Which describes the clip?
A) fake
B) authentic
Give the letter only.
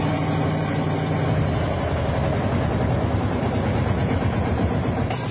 B